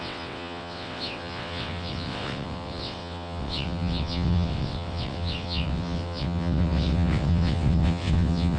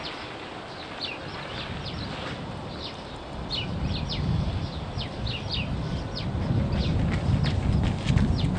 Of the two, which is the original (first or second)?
second